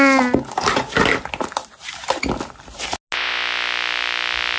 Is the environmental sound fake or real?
real